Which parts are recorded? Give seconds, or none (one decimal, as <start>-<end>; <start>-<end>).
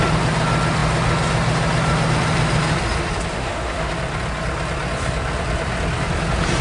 0.0-3.3; 3.9-6.6